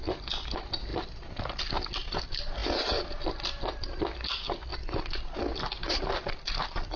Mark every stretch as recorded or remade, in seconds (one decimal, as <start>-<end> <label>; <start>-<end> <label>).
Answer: 0.0-7.0 recorded